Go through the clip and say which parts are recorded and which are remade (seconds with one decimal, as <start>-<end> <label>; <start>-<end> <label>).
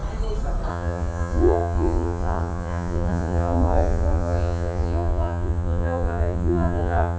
0.0-0.7 recorded; 0.7-7.2 remade